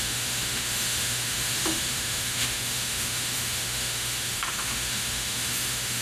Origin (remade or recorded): remade